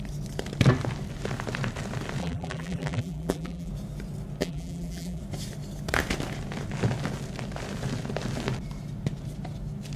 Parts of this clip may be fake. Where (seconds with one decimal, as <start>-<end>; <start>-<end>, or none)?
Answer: 2.2-3.7; 4.4-5.2